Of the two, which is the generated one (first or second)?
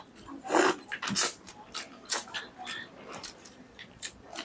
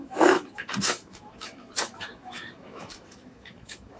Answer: second